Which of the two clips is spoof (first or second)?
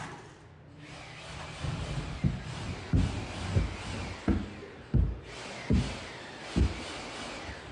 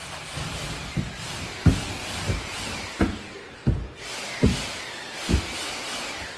second